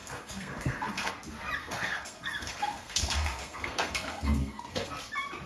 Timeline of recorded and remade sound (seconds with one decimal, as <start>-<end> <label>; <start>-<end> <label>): 0.0-1.1 remade; 1.1-1.6 recorded; 1.6-4.9 remade; 4.9-5.5 recorded